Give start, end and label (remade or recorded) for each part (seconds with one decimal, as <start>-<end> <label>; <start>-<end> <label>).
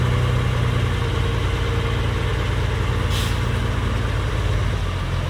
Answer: 0.0-5.3 recorded